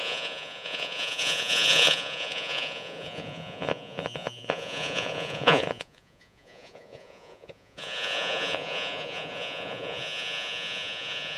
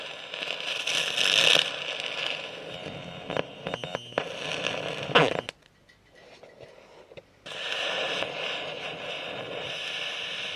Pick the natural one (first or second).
second